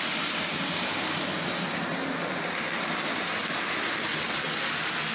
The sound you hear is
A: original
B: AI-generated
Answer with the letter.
A